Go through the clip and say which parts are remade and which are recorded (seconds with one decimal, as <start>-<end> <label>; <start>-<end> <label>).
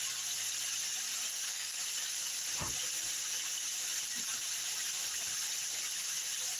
0.0-1.3 recorded; 1.3-1.8 remade; 1.8-6.6 recorded